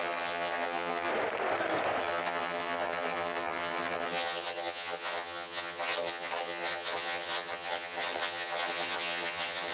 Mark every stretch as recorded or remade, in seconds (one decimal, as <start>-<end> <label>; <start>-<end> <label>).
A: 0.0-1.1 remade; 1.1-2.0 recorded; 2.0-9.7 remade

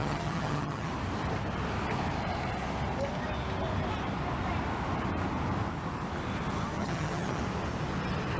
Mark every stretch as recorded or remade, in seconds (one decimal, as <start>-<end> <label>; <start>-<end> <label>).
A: 0.0-0.9 remade; 0.9-6.8 recorded; 6.8-7.4 remade; 7.4-8.4 recorded

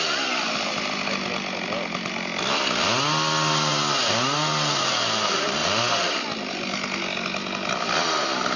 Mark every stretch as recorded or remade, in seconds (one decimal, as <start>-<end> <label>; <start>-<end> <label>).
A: 0.0-8.6 recorded

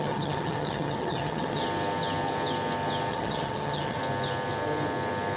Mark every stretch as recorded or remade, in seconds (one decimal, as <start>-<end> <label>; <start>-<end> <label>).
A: 0.0-1.6 remade; 1.6-3.1 recorded; 3.1-4.0 remade; 4.0-5.4 recorded

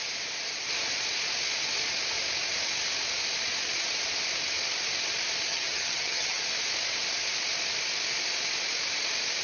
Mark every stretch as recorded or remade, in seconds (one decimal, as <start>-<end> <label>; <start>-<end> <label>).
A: 0.0-5.5 recorded; 5.5-6.4 remade; 6.4-9.4 recorded

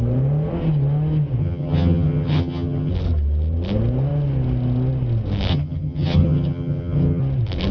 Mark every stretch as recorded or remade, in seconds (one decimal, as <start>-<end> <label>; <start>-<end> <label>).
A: 0.0-1.4 recorded; 1.4-2.9 remade; 2.9-5.5 recorded; 5.5-7.2 remade; 7.2-7.7 recorded

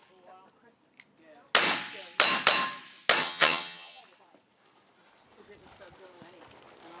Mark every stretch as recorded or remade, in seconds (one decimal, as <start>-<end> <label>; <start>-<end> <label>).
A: 0.0-3.2 recorded; 3.2-4.0 remade; 4.0-7.0 recorded

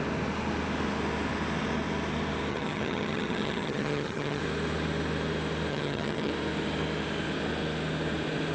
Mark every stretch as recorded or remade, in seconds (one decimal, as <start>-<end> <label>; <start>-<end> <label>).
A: 0.0-2.5 recorded; 2.5-4.4 remade; 4.4-5.7 recorded; 5.7-6.3 remade; 6.3-8.5 recorded